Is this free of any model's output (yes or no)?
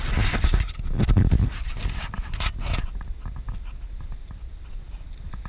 yes